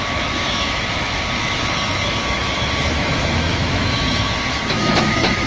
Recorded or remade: remade